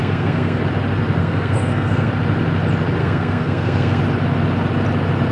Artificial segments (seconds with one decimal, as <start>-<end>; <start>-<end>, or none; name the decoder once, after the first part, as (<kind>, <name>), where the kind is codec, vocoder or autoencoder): 0.0-0.6 (codec, SNAC); 1.2-2.1; 3.0-4.0